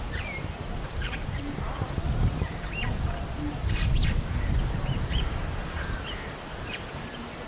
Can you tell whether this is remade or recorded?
remade